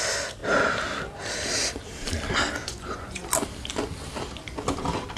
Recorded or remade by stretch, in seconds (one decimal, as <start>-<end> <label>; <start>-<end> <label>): 0.0-2.6 recorded; 2.6-3.3 remade; 3.3-5.2 recorded